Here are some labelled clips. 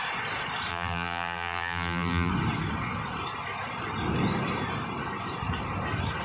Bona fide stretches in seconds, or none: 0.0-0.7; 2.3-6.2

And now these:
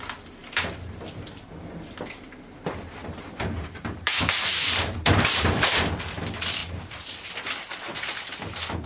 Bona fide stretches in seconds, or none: 0.0-3.0; 5.9-8.9

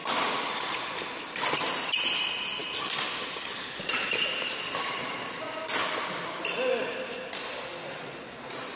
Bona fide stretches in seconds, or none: 0.0-8.8

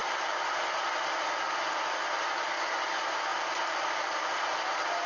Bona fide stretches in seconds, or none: 0.0-5.1